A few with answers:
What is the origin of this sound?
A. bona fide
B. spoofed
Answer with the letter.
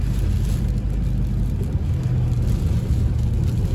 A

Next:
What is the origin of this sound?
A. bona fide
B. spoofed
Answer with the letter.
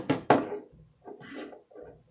A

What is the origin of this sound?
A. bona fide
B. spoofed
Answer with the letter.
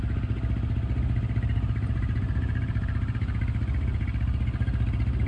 A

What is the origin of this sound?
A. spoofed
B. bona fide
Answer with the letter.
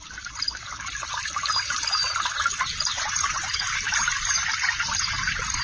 B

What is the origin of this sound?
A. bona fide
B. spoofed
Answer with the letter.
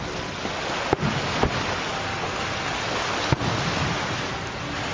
A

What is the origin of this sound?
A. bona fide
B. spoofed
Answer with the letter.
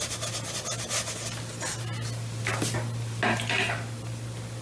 A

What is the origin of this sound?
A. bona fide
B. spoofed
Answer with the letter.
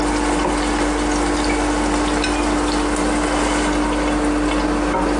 A